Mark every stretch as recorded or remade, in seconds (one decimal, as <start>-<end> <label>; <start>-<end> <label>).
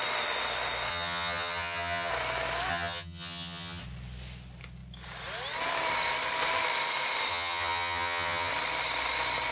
0.0-0.9 recorded; 0.9-2.1 remade; 2.1-2.7 recorded; 2.7-3.8 remade; 3.8-7.3 recorded; 7.3-8.5 remade; 8.5-9.5 recorded